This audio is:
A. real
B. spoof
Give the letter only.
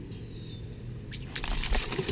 A